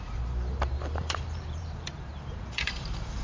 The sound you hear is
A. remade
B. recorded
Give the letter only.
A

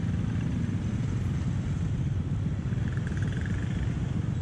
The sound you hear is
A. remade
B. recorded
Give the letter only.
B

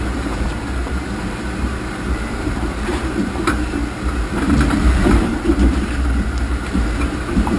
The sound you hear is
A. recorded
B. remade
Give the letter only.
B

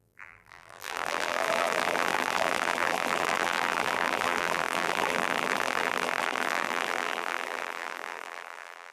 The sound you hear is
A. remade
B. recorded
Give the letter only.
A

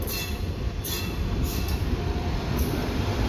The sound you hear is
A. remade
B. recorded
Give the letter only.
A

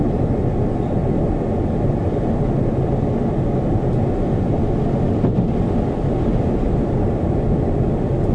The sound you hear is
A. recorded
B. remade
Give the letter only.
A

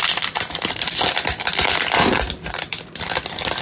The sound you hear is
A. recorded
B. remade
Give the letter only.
B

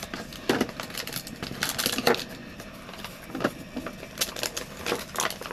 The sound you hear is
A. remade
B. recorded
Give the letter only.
B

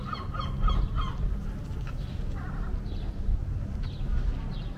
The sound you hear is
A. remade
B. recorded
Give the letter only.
B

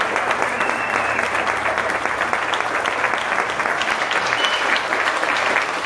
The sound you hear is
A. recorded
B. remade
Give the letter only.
A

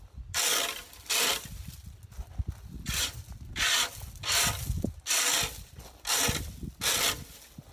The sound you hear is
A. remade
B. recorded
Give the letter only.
B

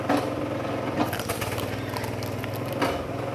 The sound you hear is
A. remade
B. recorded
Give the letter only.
B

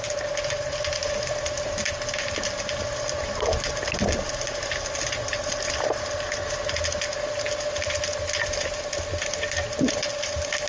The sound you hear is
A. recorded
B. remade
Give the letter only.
A